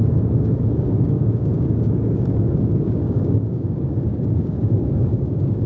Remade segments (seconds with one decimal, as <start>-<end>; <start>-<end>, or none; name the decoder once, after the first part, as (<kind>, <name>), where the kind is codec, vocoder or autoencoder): 0.0-5.7 (codec, DAC)